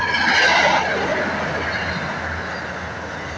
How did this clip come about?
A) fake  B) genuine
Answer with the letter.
B